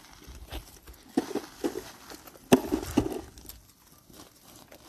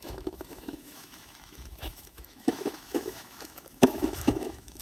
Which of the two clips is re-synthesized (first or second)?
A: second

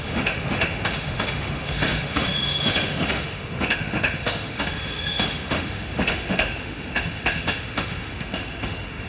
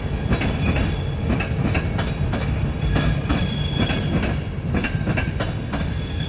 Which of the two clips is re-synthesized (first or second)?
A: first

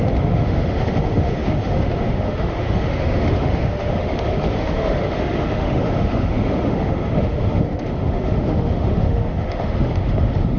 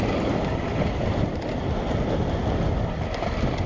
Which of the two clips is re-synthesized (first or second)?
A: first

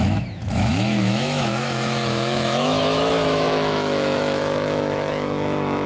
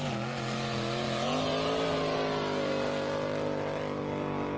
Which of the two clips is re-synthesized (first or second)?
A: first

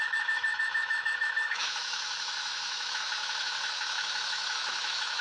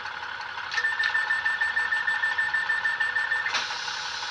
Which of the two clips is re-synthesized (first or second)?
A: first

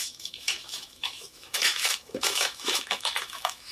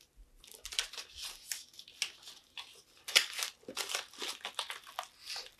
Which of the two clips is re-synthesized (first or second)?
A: first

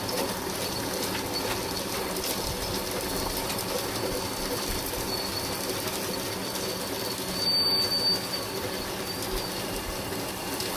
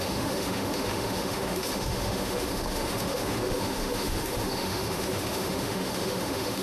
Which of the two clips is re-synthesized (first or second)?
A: second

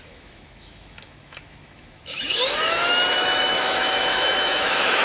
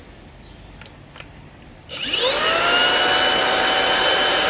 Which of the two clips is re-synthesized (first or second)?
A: first